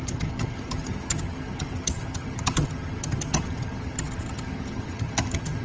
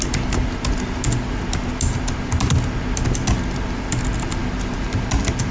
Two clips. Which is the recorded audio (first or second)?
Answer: second